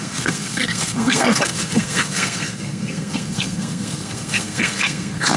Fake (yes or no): yes